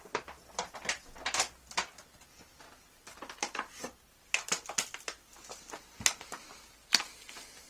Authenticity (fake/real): real